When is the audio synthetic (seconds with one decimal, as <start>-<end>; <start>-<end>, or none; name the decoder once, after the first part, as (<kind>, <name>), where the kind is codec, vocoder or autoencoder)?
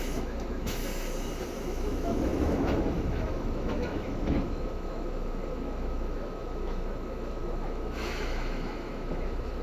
0.0-0.8 (autoencoder, DAC-VAE); 1.6-9.6